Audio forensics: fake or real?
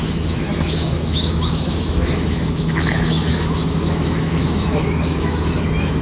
fake